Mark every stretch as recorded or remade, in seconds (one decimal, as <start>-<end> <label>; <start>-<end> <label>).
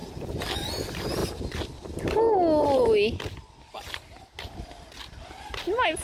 0.0-6.0 recorded